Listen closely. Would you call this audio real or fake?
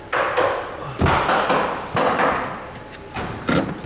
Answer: real